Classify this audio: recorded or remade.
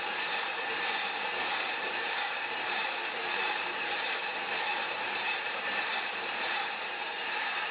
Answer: remade